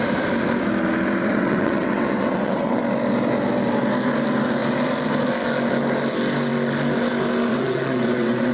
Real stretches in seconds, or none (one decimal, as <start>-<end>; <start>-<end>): 0.0-1.3; 2.8-7.5